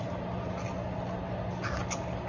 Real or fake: real